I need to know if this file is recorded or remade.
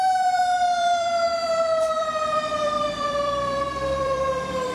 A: remade